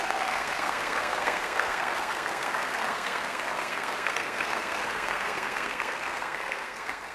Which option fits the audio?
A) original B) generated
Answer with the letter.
B